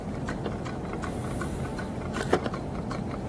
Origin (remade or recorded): recorded